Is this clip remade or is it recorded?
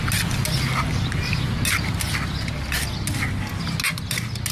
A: recorded